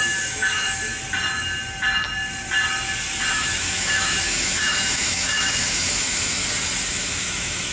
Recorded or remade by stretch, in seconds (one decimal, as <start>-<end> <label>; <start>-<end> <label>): 0.0-0.9 remade; 0.9-3.3 recorded; 3.3-6.4 remade; 6.4-6.9 recorded; 6.9-7.7 remade